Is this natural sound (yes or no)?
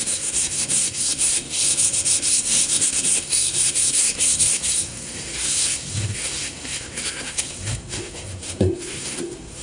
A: no